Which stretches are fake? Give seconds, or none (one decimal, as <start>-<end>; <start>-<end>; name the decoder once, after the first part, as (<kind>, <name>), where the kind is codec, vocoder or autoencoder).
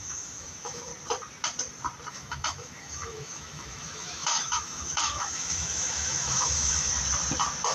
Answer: 0.0-0.9 (autoencoder, DAC-VAE); 2.1-6.9